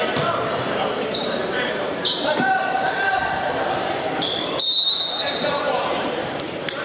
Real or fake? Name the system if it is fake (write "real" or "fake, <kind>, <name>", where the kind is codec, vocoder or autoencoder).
fake, vocoder, BigVGAN v2